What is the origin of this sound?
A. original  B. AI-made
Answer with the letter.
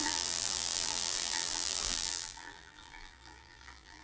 B